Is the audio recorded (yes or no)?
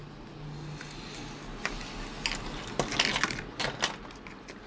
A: yes